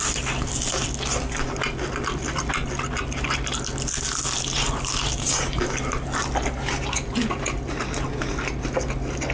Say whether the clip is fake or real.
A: real